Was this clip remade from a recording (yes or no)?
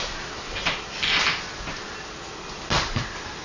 no